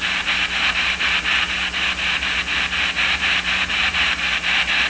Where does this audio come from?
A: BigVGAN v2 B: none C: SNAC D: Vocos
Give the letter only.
A